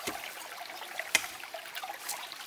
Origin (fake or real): real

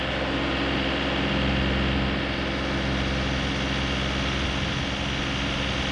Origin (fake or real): real